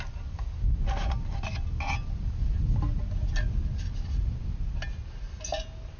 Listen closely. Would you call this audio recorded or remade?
recorded